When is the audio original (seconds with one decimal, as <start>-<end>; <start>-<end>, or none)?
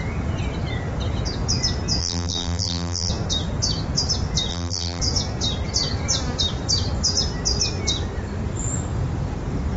0.0-2.0; 3.1-4.5; 5.0-9.8